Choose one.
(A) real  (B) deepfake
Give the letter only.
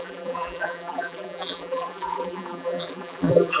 B